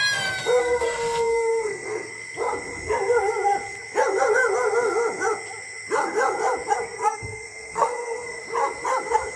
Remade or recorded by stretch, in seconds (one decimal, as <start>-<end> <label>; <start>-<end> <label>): 0.0-0.6 recorded; 0.6-2.1 remade; 2.1-6.8 recorded; 6.8-8.4 remade; 8.4-9.4 recorded

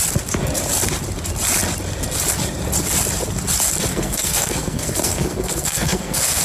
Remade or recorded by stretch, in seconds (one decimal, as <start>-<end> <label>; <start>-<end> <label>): 0.0-3.9 recorded; 3.9-6.4 remade

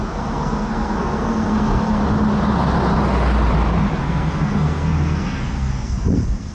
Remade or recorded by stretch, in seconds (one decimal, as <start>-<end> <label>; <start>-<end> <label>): 0.0-2.0 remade; 2.0-4.0 recorded; 4.0-6.5 remade

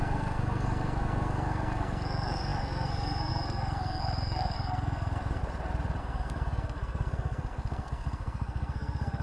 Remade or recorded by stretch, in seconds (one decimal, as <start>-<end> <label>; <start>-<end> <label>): 0.0-5.4 remade; 5.4-6.0 recorded; 6.0-9.2 remade

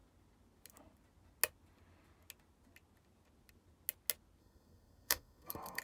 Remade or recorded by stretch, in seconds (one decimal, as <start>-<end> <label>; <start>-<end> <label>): 0.0-4.4 recorded; 4.4-5.8 remade

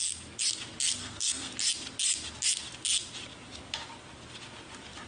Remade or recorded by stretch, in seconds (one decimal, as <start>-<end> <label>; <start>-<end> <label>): 0.0-1.0 recorded; 1.0-1.5 remade; 1.5-5.1 recorded